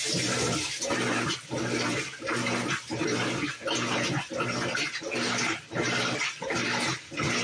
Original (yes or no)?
yes